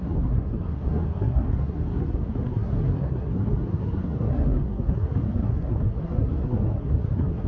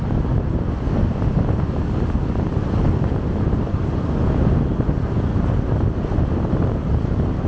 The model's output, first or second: first